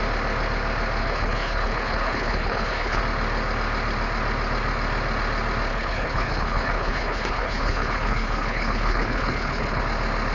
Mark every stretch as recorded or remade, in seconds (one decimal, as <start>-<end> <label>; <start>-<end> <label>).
0.0-1.0 recorded; 1.0-3.0 remade; 3.0-5.7 recorded; 5.7-9.8 remade; 9.8-10.3 recorded